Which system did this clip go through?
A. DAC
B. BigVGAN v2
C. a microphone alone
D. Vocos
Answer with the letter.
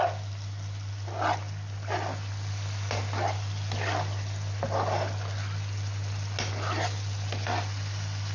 C